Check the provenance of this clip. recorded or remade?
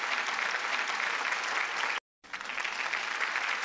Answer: recorded